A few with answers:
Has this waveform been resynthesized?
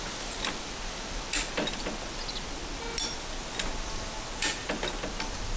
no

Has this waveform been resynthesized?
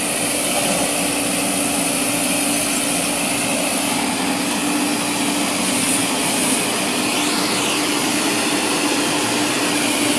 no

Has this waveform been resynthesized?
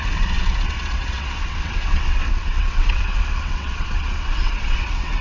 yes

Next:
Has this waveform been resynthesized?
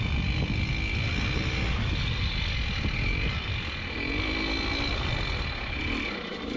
no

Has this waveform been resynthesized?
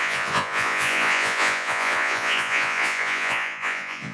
yes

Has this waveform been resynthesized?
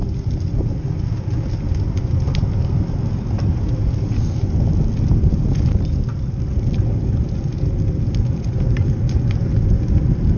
no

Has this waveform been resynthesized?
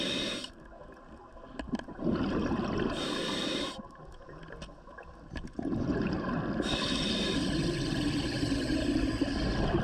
no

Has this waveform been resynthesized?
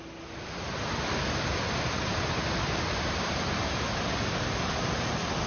no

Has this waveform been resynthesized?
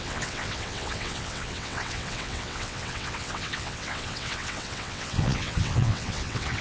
yes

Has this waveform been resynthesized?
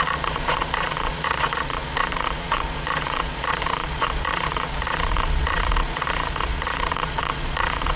yes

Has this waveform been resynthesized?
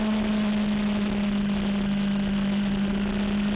no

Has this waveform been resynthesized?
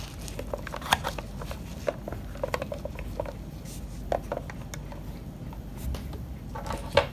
no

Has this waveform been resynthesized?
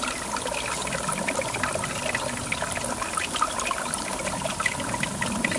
no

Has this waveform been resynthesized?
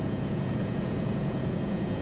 yes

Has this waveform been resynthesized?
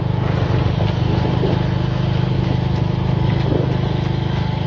no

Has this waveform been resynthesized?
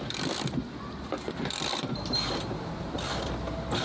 yes